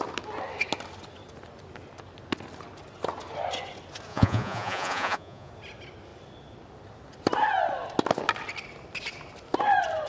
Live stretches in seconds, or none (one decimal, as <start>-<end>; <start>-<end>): 0.0-4.1; 5.5-10.1